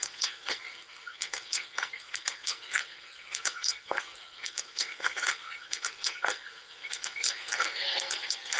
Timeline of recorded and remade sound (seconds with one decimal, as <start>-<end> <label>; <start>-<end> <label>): 0.0-8.6 remade